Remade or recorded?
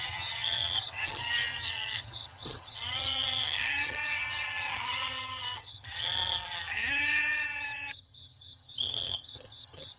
remade